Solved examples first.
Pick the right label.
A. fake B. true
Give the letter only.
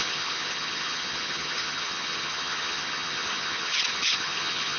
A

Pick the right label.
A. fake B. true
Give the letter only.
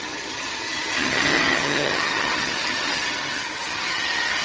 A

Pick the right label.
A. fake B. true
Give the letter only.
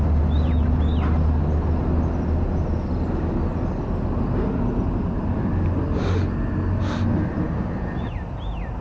B